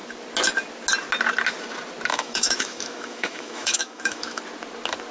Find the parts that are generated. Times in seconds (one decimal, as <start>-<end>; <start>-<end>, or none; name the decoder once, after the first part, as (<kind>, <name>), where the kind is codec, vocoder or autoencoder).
2.1-4.4 (autoencoder, DAC-VAE)